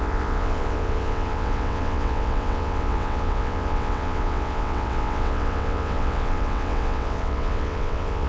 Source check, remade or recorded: remade